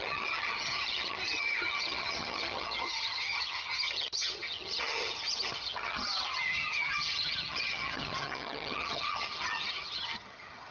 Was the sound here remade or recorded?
remade